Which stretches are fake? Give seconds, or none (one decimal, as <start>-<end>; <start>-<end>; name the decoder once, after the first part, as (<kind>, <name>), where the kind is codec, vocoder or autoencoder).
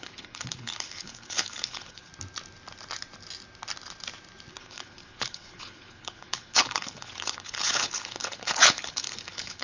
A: 0.0-2.1 (codec, HILCodec); 4.5-9.6